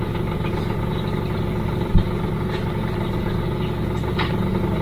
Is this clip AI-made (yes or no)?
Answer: no